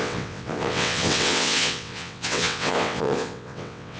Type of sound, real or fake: fake